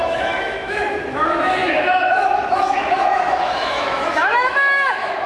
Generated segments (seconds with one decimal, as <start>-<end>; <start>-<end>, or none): 0.0-5.3